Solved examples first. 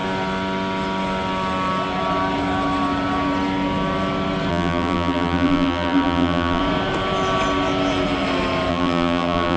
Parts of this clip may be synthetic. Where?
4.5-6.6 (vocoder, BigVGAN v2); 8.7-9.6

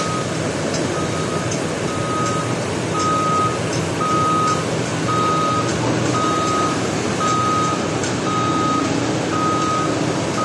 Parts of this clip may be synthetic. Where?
none

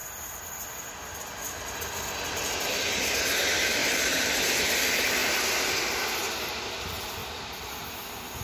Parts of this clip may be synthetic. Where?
3.8-4.4 (vocoder, BigVGAN v2)

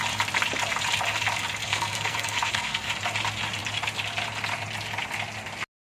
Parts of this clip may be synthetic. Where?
1.6-2.9 (codec, SNAC)

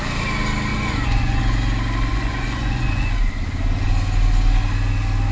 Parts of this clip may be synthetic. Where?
0.7-1.4 (vocoder, Vocos); 2.1-3.1

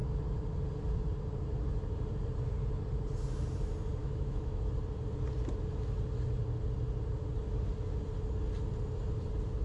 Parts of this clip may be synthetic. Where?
4.0-4.6 (autoencoder, DAC-VAE)